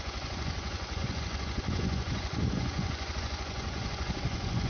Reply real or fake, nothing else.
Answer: fake